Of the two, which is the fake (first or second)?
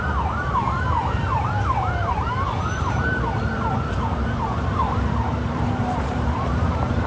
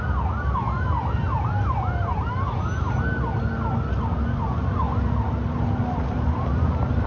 first